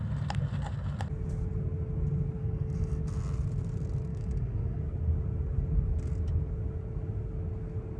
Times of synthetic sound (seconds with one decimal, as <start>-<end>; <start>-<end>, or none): 2.4-3.0; 4.1-4.8